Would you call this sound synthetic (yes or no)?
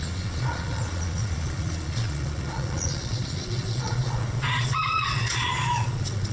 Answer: yes